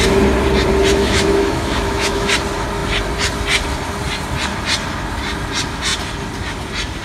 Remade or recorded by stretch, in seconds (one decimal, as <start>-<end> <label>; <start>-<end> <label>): 0.0-0.9 recorded; 0.9-2.3 remade; 2.3-7.0 recorded